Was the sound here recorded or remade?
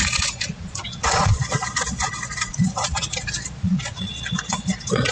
remade